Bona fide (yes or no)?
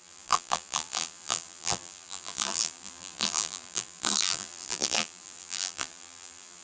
no